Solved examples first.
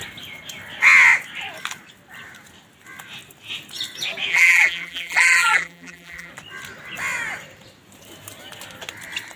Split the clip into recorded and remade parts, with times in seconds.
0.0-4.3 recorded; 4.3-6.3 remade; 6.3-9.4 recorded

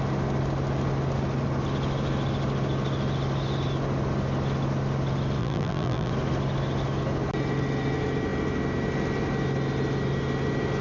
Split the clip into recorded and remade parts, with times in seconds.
0.0-5.4 recorded; 5.4-6.1 remade; 6.1-10.8 recorded

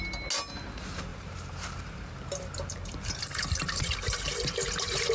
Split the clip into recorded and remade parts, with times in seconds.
0.0-1.1 recorded; 1.1-4.2 remade; 4.2-5.1 recorded